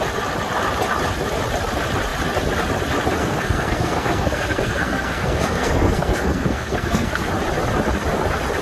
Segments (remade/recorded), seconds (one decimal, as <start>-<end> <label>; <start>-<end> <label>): 0.0-3.2 recorded; 3.2-7.3 remade; 7.3-8.6 recorded